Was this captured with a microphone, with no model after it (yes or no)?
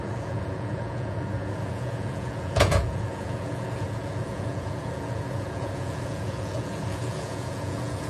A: no